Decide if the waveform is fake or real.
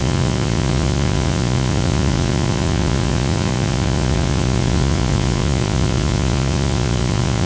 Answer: fake